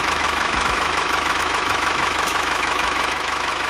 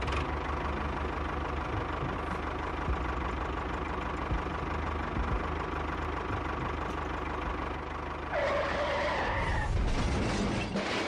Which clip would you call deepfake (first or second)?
first